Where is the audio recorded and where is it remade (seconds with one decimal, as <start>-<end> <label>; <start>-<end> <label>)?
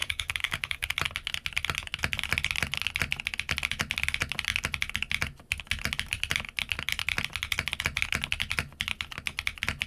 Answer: 0.0-0.9 remade; 0.9-9.9 recorded